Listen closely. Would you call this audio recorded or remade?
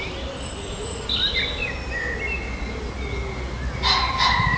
recorded